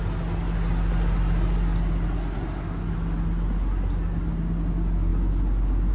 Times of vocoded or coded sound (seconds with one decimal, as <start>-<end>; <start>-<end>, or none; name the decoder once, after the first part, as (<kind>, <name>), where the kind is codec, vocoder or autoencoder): none